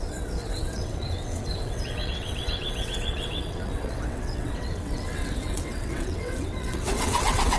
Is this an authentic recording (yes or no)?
no